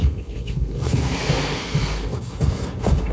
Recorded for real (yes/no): no